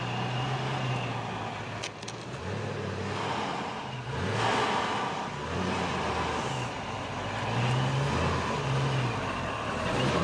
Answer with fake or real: real